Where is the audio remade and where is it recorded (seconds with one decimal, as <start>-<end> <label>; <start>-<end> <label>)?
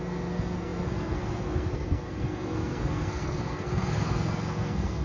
0.0-5.0 remade